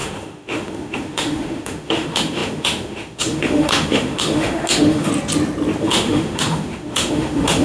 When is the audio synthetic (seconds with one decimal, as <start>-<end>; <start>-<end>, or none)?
0.0-5.1; 5.8-7.6